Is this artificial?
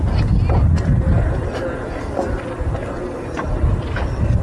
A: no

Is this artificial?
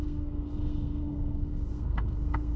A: yes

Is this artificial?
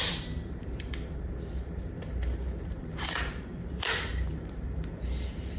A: yes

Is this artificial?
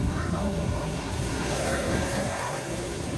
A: yes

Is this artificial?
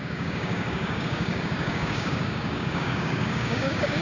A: yes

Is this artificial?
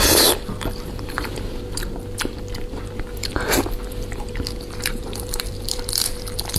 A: yes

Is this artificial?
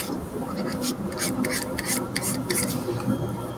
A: yes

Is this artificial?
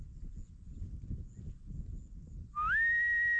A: no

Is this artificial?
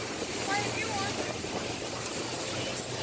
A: no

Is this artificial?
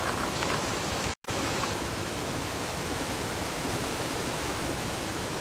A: yes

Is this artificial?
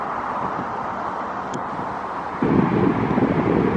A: no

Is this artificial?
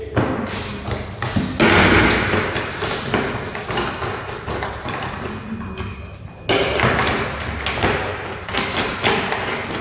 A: no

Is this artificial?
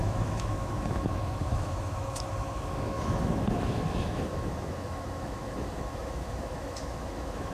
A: yes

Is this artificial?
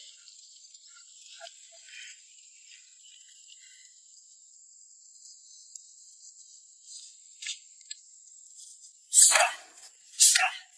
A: no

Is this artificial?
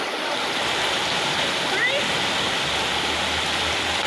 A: no